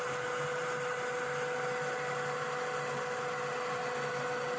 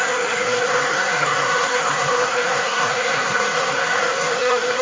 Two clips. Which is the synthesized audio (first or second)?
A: second